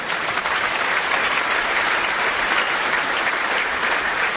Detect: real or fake fake